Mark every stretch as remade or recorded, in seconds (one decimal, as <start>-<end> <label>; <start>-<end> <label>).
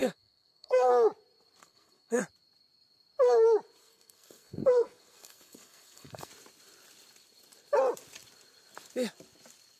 0.0-0.9 remade; 0.9-1.6 recorded; 1.6-2.2 remade; 2.2-3.8 recorded; 3.8-6.3 remade; 6.3-9.8 recorded